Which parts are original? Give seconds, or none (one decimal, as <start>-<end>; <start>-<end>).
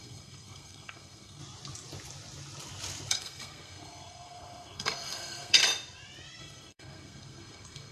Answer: 1.4-3.1; 5.6-6.4